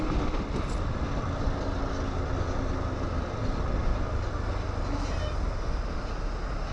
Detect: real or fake real